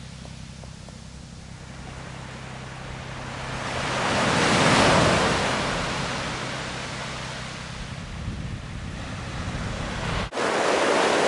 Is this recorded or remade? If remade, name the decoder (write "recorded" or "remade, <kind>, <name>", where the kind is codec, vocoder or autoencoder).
recorded